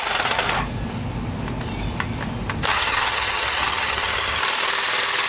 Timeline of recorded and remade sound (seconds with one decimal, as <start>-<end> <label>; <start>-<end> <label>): 0.0-2.7 recorded; 2.7-4.4 remade; 4.4-5.3 recorded